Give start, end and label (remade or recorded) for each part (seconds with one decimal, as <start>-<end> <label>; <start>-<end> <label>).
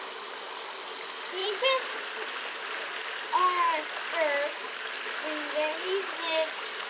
0.0-1.4 recorded; 1.4-2.8 remade; 2.8-5.8 recorded; 5.8-6.9 remade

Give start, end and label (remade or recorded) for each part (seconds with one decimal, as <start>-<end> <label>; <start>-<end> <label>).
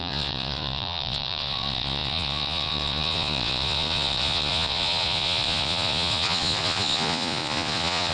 0.0-8.1 remade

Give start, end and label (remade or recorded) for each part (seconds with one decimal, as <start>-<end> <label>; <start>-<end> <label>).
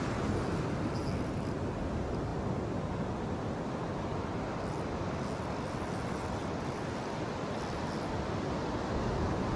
0.0-9.6 recorded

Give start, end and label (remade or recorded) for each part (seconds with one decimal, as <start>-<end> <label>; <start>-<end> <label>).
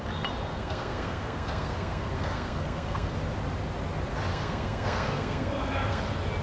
0.0-0.5 recorded; 0.5-3.1 remade; 3.1-4.3 recorded; 4.3-6.0 remade; 6.0-6.4 recorded